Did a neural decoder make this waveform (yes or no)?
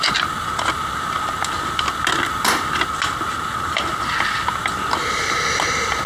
no